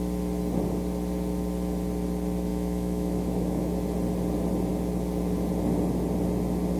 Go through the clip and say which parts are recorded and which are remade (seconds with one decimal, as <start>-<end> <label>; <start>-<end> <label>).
0.0-2.5 recorded; 2.5-3.7 remade; 3.7-6.8 recorded